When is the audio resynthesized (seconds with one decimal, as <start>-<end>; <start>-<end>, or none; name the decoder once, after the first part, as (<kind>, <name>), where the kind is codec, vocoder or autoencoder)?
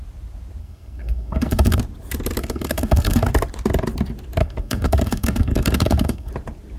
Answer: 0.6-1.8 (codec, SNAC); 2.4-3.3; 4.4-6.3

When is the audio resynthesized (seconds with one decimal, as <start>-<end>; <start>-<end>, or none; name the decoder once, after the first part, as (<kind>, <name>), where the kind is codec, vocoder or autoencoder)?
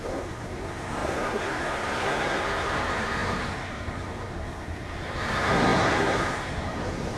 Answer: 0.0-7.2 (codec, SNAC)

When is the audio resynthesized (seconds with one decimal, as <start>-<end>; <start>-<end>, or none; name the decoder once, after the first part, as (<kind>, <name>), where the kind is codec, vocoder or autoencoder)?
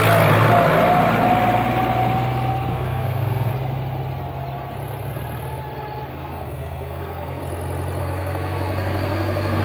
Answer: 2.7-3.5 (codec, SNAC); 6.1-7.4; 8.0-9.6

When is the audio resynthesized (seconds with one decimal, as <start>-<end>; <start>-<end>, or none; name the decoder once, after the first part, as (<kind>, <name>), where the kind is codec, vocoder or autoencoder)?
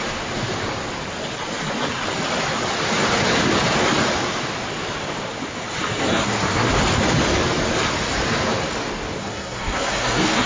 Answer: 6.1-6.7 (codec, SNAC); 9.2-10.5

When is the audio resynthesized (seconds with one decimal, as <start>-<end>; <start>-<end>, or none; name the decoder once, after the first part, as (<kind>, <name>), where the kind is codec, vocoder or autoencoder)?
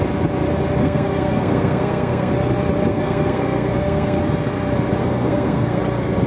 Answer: 0.8-2.3 (codec, SNAC); 2.9-4.2; 5.0-5.8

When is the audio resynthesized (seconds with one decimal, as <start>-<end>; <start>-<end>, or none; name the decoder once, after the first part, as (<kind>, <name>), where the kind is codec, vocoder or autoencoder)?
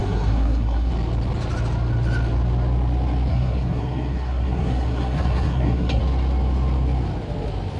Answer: 0.0-0.9 (codec, SNAC); 3.3-6.0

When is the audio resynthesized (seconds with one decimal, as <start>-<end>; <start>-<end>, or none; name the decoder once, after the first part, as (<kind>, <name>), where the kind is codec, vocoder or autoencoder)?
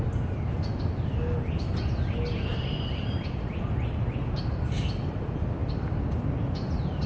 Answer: none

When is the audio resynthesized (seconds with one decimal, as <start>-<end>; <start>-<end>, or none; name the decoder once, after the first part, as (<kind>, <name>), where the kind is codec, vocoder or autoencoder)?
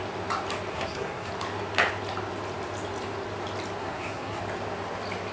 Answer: 0.7-1.3 (codec, SNAC); 3.8-4.4